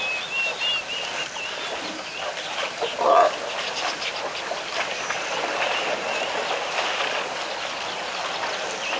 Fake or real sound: real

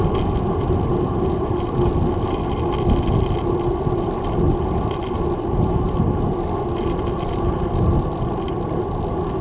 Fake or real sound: real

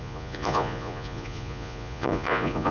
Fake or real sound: fake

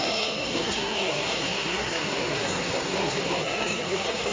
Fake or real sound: fake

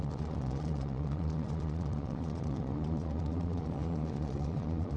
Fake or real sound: fake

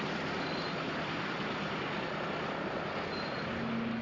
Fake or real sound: real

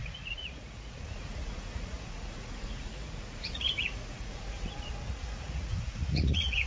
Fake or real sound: fake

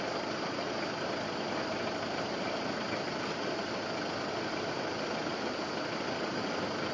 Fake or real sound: real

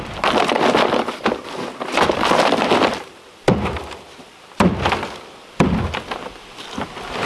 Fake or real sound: fake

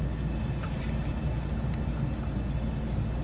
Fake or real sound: real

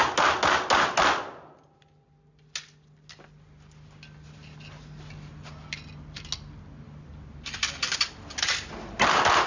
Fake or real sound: real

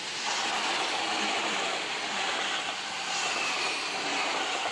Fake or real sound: real